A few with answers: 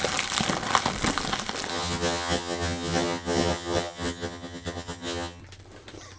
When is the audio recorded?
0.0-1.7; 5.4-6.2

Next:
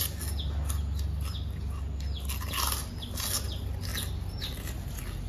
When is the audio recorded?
0.0-5.3

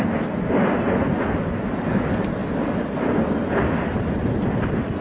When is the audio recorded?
0.0-5.0

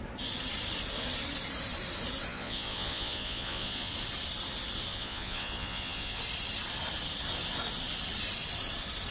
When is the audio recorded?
0.0-2.3; 3.9-4.9; 6.2-9.1

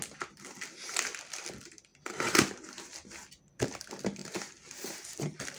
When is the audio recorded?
0.0-5.6

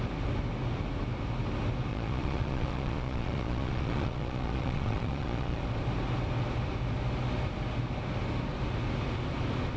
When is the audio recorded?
0.0-1.9; 5.6-9.8

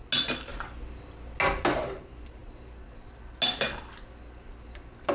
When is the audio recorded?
0.0-5.1

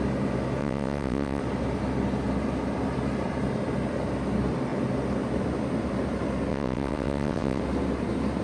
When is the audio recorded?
0.0-0.6; 1.4-6.5; 7.6-8.4